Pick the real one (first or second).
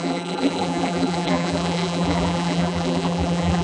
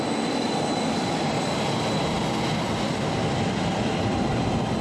second